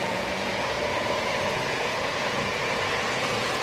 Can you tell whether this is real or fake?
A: fake